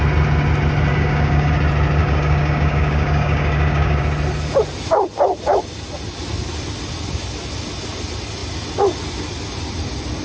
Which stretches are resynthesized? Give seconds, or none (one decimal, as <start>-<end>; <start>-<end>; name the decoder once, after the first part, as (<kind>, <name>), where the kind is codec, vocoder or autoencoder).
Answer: 0.9-1.5 (codec, DAC); 2.0-4.0